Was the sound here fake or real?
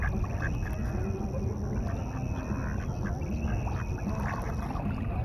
real